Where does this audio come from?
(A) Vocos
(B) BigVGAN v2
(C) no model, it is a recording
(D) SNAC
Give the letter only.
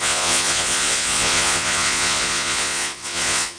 A